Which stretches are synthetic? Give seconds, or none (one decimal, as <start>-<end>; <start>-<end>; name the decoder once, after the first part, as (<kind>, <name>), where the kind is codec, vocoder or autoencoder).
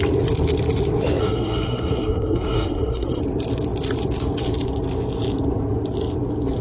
1.2-3.2 (codec, SNAC)